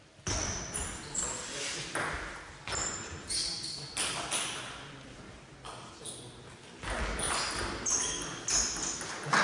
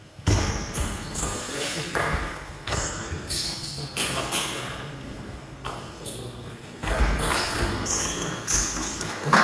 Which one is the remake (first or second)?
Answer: second